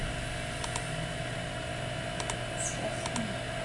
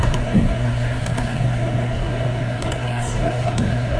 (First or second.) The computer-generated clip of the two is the second